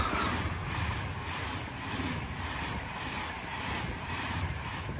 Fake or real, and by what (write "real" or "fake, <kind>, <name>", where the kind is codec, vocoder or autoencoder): real